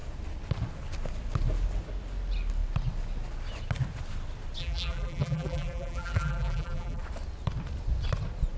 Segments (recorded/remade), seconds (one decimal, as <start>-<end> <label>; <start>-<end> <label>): 0.0-4.6 recorded; 4.6-7.0 remade; 7.0-8.6 recorded